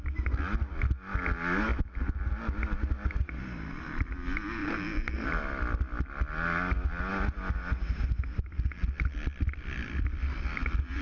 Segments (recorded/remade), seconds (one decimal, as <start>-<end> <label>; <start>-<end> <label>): 0.0-11.0 recorded